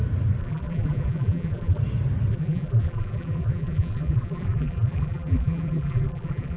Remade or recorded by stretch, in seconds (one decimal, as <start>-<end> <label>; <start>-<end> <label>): 0.0-0.4 recorded; 0.4-1.8 remade; 1.8-2.3 recorded; 2.3-6.6 remade